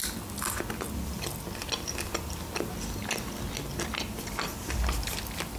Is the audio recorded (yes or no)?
yes